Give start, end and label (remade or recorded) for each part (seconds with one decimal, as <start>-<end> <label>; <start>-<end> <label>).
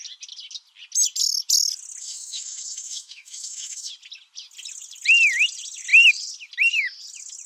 0.0-2.0 recorded; 2.0-3.9 remade; 3.9-7.5 recorded